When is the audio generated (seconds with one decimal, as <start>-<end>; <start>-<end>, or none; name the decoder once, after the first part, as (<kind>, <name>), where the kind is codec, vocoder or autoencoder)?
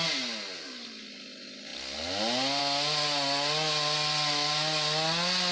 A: none